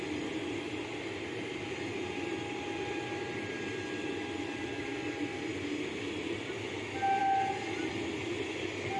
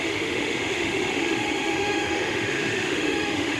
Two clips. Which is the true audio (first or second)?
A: first